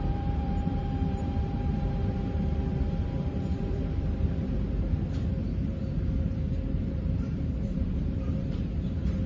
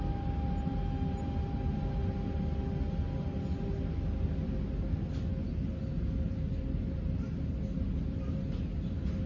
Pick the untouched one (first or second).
second